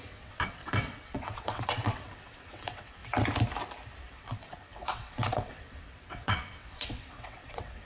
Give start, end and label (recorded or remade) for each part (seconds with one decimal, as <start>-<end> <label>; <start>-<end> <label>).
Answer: 0.0-3.0 remade; 3.0-4.0 recorded; 4.0-7.9 remade